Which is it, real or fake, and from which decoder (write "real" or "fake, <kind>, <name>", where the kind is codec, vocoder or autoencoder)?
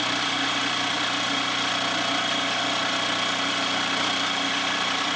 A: real